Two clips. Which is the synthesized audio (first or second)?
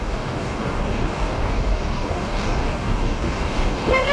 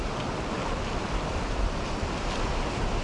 first